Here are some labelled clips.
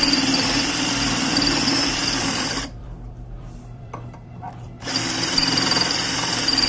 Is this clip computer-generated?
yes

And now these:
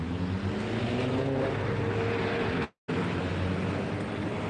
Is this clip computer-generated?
no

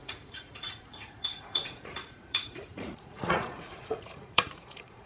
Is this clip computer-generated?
yes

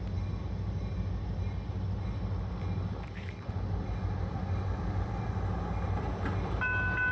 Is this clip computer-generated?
no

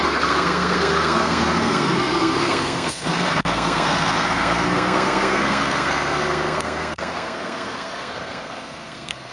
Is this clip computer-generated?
yes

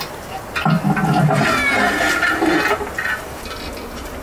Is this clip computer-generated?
no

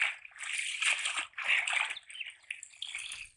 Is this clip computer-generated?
no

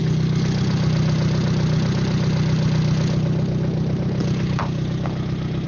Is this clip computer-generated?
no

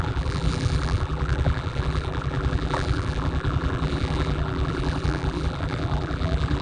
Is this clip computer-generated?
yes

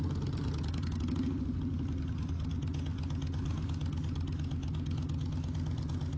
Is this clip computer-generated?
no